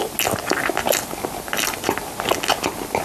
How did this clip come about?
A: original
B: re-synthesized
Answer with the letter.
A